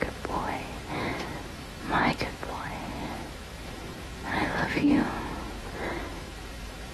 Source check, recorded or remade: remade